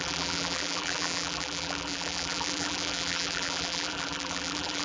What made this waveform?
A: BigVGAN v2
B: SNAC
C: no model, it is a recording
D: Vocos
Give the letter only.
A